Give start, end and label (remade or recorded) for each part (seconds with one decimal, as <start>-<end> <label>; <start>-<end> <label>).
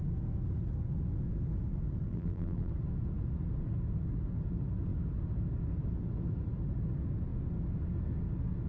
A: 0.0-2.1 recorded; 2.1-2.7 remade; 2.7-8.7 recorded